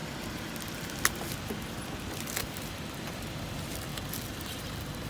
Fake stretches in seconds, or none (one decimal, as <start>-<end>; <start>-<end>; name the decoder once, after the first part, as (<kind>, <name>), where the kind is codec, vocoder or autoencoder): none